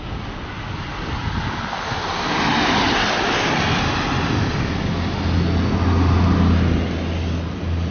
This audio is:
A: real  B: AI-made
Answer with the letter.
A